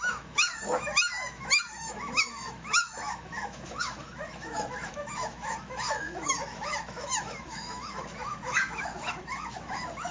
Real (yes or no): no